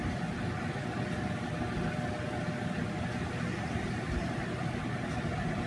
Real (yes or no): yes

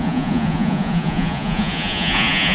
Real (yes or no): no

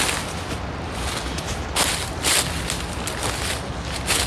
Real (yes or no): yes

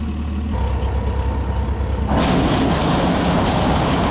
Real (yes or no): yes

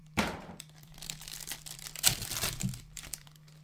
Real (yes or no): no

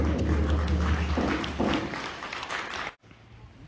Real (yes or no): yes